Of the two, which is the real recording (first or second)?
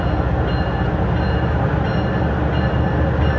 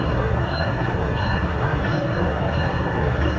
first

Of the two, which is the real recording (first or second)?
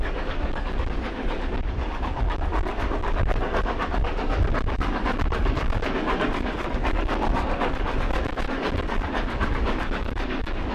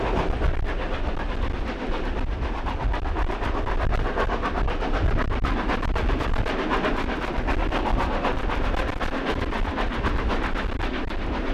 second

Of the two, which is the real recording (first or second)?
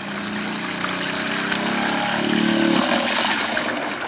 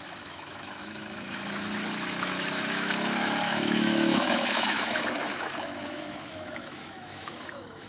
first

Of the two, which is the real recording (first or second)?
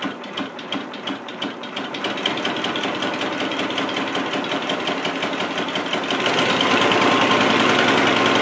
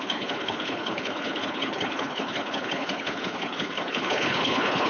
first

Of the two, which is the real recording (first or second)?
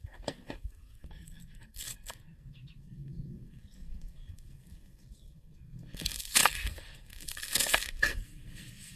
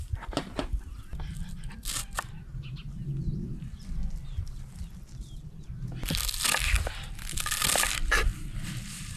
second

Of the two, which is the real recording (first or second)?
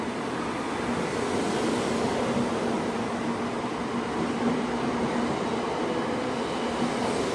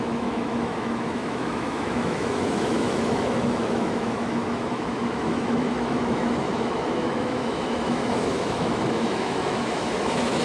first